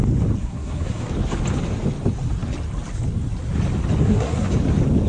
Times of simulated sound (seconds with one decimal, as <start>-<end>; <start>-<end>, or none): 0.4-1.1; 4.0-4.5